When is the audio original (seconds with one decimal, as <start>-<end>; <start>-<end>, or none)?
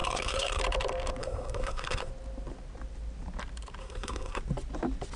0.6-1.2; 2.1-3.8; 4.4-5.2